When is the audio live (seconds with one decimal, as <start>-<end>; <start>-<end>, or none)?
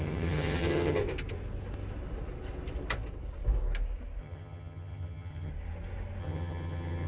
1.0-4.2; 5.5-6.2